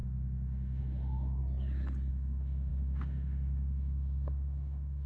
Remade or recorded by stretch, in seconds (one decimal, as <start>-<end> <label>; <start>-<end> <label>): 0.0-1.4 remade; 1.4-2.1 recorded; 2.1-5.1 remade